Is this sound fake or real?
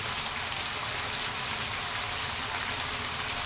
real